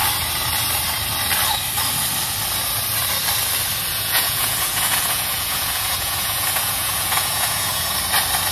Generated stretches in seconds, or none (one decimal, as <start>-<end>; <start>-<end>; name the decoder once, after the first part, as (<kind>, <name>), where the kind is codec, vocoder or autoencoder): 3.9-7.9 (vocoder, Vocos)

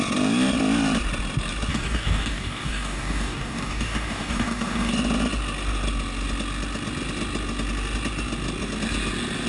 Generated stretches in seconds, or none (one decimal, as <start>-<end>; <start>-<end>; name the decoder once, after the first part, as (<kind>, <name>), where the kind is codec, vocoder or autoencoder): 1.7-4.9 (codec, DAC)

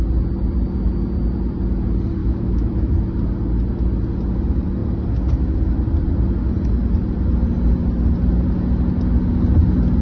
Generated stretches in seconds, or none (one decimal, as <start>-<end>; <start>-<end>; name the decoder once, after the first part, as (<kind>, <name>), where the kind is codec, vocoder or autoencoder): 2.2-2.9 (autoencoder, DAC-VAE)

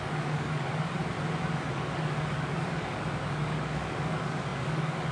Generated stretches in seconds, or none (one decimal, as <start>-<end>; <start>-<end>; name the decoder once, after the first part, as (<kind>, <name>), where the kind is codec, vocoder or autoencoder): 0.0-1.0 (codec, DAC); 1.7-5.1